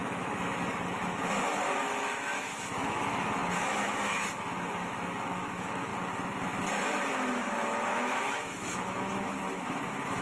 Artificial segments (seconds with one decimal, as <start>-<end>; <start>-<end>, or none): 0.0-5.9; 6.6-10.2